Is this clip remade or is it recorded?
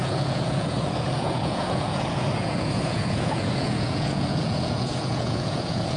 remade